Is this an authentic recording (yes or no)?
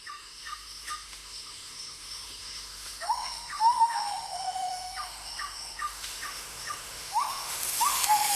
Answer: no